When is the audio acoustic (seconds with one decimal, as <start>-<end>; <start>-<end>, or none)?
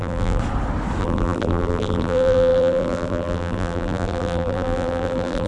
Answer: 0.4-1.0